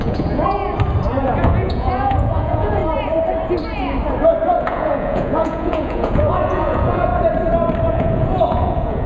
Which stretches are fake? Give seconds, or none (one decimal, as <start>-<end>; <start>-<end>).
0.0-0.6; 1.2-2.8; 4.6-7.1; 7.9-9.1